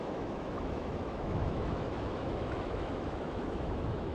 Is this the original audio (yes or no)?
no